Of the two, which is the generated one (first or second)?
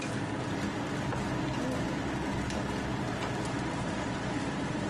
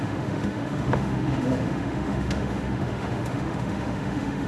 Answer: second